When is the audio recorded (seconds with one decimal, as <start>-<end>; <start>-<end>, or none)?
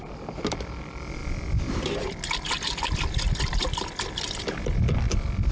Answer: 0.0-5.5